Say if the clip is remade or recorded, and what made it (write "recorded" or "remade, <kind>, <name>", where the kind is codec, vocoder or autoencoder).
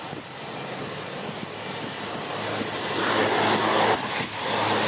recorded